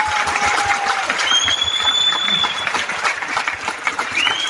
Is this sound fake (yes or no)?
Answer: no